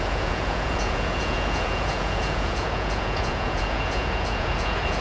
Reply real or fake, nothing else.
fake